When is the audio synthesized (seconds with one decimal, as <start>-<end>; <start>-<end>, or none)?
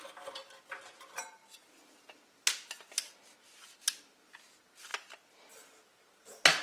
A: none